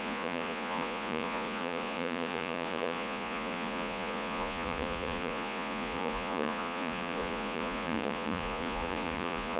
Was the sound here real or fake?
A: fake